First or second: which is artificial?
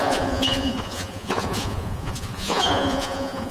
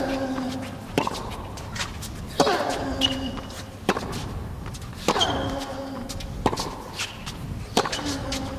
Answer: first